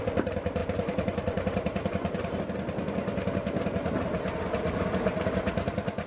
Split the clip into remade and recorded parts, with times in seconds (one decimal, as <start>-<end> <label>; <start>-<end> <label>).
0.0-0.6 recorded; 0.6-2.4 remade; 2.4-6.1 recorded